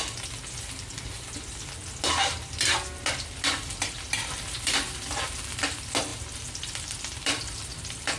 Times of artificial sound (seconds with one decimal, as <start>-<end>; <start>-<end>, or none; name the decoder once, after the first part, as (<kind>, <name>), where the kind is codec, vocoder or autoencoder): 0.0-8.2 (vocoder, BigVGAN v2)